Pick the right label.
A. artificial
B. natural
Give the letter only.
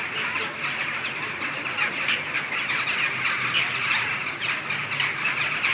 B